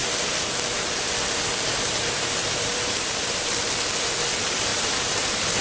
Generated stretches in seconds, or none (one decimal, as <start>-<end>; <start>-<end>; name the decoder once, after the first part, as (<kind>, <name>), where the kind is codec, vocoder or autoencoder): 0.0-0.5 (vocoder, BigVGAN v2); 1.7-3.5; 4.7-5.6